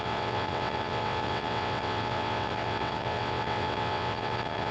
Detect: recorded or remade remade